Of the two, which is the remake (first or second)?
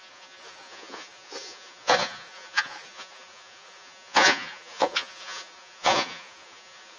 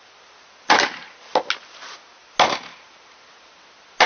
first